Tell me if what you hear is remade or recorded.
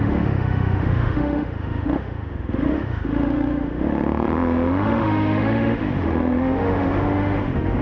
remade